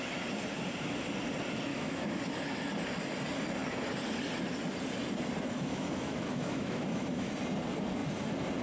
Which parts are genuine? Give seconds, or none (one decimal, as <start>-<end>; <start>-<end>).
0.0-1.7; 2.2-5.7; 7.3-8.6